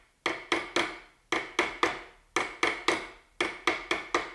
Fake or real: real